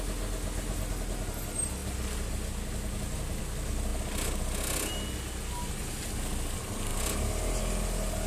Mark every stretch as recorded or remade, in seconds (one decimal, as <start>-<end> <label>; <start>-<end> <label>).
0.0-8.3 recorded